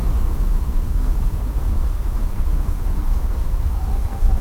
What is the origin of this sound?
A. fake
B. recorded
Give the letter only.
A